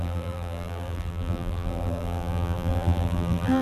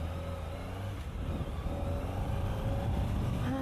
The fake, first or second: first